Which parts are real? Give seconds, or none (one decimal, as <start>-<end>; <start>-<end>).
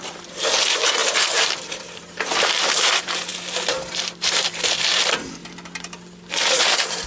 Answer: 5.4-6.5